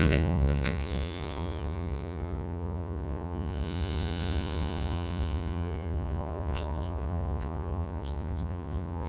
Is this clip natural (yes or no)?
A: no